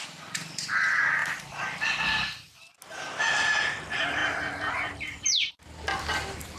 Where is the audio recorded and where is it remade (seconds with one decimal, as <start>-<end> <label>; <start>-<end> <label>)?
0.0-6.6 recorded